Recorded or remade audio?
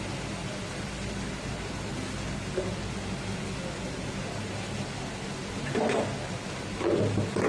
recorded